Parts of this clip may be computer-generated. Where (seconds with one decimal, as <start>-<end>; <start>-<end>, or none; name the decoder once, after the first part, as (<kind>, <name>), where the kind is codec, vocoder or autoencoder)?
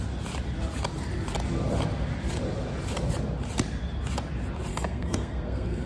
4.7-5.9 (codec, SNAC)